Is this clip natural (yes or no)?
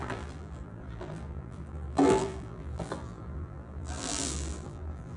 no